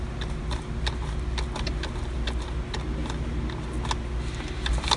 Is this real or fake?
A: real